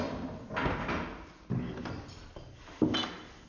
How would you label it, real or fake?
real